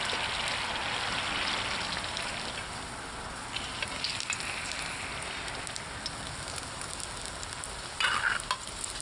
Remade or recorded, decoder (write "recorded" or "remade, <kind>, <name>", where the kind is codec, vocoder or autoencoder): recorded